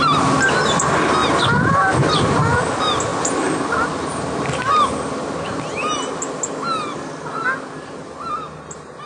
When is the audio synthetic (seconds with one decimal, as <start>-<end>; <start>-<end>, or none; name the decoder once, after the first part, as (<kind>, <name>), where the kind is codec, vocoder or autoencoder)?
none